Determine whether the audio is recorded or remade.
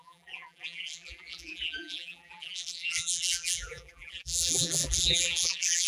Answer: remade